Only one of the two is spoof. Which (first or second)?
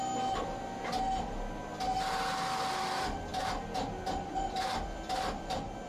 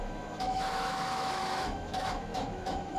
second